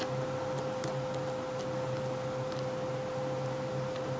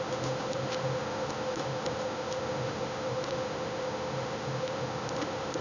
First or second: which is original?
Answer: first